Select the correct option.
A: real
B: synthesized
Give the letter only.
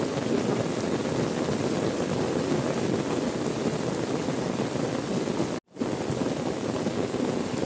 A